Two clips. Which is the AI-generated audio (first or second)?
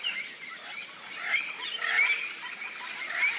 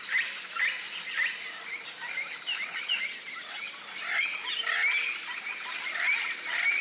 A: first